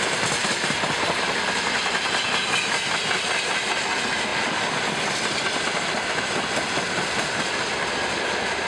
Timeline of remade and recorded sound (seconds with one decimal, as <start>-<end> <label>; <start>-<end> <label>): 0.0-8.7 recorded